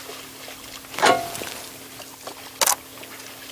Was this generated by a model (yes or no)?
no